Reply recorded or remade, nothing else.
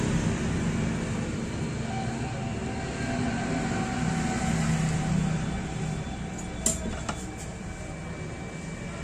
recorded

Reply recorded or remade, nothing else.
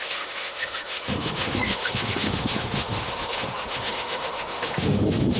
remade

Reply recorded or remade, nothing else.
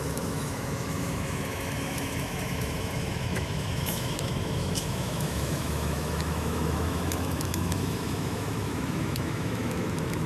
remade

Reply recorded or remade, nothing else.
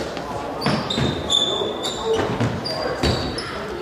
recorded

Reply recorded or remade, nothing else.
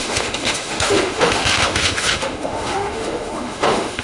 remade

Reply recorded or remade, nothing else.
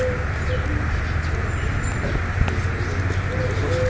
recorded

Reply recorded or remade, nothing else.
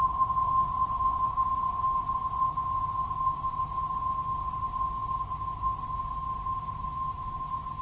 recorded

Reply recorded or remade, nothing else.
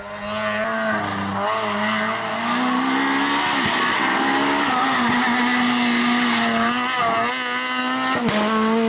recorded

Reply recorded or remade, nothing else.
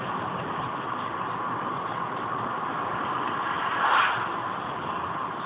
recorded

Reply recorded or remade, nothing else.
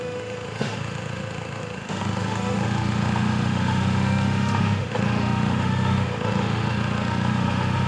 remade